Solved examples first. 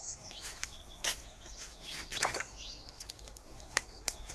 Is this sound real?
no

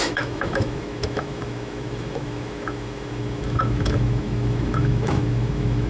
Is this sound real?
no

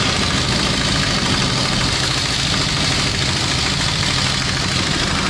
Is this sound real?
yes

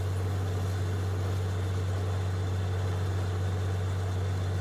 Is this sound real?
yes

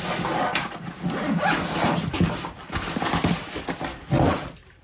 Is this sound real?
yes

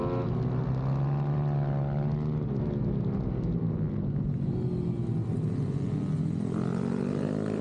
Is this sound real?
yes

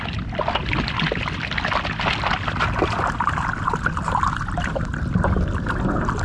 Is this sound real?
yes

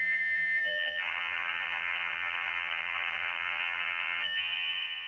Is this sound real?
no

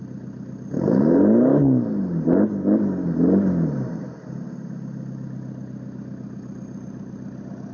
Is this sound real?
yes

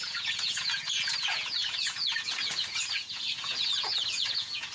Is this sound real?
no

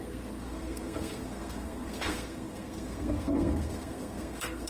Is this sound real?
no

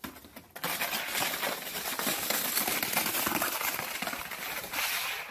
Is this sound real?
yes